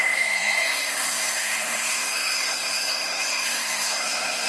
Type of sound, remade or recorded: remade